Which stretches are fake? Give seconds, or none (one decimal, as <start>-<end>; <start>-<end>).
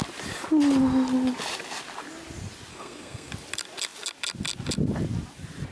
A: 2.7-3.3